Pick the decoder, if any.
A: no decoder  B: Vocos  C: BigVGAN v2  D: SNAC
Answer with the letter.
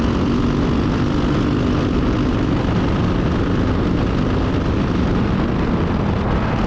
A